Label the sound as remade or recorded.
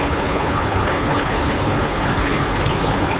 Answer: remade